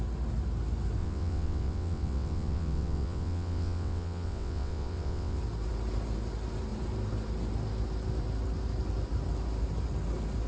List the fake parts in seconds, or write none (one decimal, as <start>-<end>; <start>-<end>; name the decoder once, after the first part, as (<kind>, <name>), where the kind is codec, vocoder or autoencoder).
1.0-5.4 (vocoder, WaveNeXt)